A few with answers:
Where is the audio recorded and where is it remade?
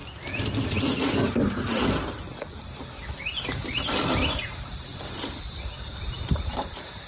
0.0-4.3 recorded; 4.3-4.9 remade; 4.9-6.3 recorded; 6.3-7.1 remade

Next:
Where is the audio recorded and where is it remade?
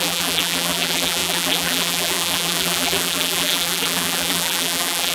0.0-5.1 remade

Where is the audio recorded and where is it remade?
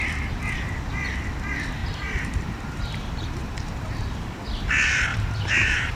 0.0-1.8 recorded; 1.8-3.9 remade; 3.9-5.1 recorded; 5.1-6.0 remade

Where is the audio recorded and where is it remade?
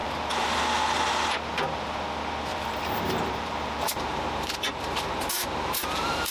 0.0-0.6 remade; 0.6-2.5 recorded; 2.5-6.3 remade